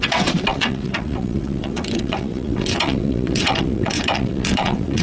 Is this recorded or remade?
remade